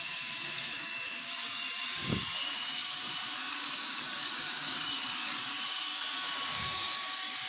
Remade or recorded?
remade